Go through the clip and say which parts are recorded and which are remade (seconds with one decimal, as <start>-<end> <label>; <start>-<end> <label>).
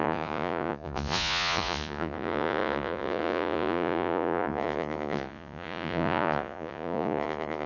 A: 0.0-7.7 remade